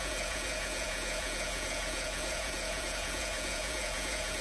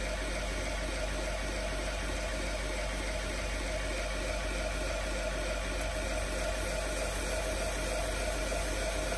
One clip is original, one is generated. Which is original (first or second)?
second